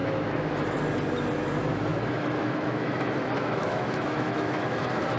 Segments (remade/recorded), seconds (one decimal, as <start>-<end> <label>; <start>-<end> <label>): 0.0-0.8 remade; 0.8-1.9 recorded; 1.9-5.2 remade